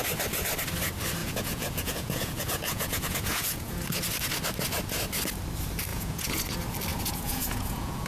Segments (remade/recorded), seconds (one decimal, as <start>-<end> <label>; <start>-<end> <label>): 0.0-1.2 recorded; 1.2-3.8 remade; 3.8-5.9 recorded; 5.9-6.4 remade; 6.4-6.9 recorded; 6.9-8.1 remade